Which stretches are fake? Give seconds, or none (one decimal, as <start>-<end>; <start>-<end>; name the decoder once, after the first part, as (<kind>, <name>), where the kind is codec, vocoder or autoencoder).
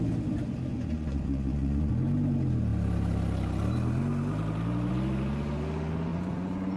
0.7-1.9 (vocoder, Vocos); 6.1-6.8